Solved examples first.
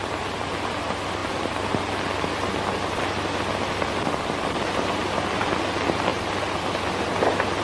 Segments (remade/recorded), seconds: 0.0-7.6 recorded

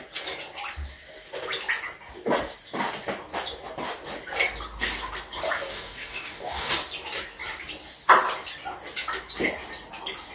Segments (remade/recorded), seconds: 0.0-5.7 recorded; 5.7-6.7 remade; 6.7-10.3 recorded

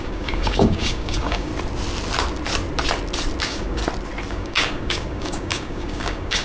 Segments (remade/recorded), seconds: 0.0-1.5 remade; 1.5-3.4 recorded; 3.4-3.8 remade; 3.8-4.3 recorded; 4.3-6.4 remade

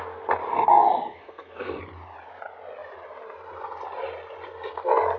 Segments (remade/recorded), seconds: 0.0-0.5 recorded; 0.5-1.8 remade; 1.8-5.2 recorded

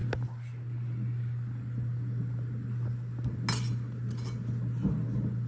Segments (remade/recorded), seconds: 0.0-5.5 recorded

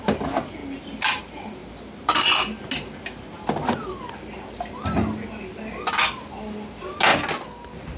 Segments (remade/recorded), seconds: 0.0-8.0 recorded

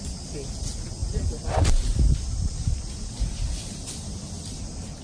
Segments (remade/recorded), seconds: 0.0-5.0 recorded

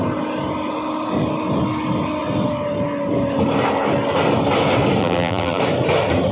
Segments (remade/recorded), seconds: 0.0-5.0 recorded; 5.0-5.6 remade; 5.6-6.3 recorded